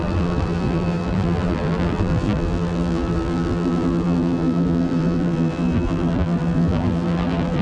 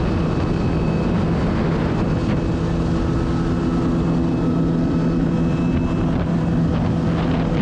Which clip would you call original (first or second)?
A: second